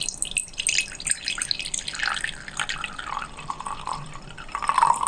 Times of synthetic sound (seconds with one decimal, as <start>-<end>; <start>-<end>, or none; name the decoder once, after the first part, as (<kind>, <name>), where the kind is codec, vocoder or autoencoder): none